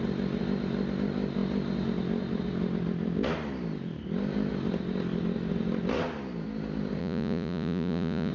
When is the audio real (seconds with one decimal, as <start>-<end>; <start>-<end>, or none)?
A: 0.0-7.0